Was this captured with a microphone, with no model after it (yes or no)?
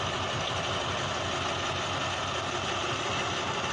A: yes